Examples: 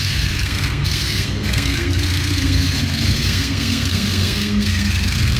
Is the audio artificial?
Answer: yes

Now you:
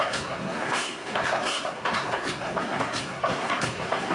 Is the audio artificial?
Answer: yes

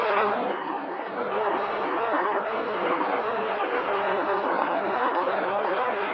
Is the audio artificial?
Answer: yes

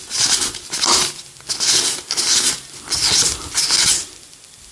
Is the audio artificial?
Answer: no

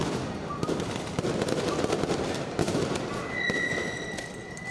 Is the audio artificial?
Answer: no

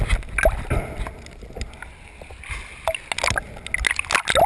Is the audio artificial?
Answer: no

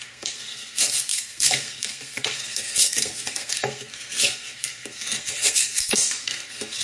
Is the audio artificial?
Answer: yes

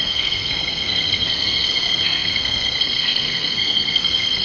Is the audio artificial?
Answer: yes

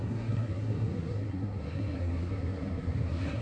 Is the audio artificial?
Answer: yes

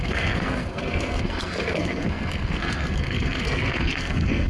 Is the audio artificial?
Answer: yes